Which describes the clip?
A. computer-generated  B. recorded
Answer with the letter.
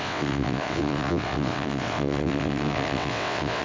A